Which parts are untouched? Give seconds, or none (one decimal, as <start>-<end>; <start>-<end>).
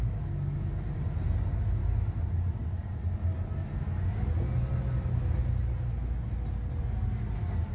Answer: 0.0-7.7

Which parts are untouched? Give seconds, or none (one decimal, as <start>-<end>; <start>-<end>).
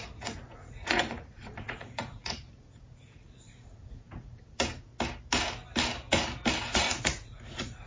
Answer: 4.9-6.6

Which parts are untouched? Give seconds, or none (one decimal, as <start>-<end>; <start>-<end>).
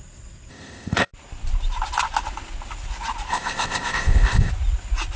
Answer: 0.0-0.5; 1.1-3.3; 4.5-5.2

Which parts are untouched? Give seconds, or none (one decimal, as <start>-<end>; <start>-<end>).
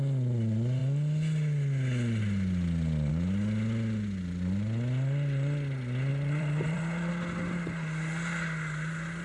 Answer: 0.0-6.1; 7.1-9.2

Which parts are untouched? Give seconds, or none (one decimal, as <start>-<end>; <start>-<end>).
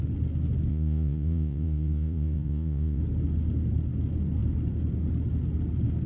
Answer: 0.0-0.7; 3.0-6.1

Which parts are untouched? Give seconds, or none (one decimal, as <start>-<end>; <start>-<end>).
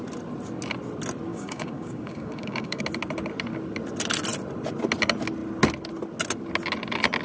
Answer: 0.0-1.3; 2.8-7.2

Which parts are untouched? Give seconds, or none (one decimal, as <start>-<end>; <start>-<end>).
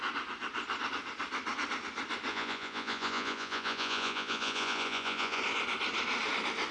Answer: 0.0-2.3; 5.4-6.7